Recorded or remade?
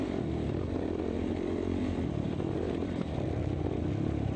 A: recorded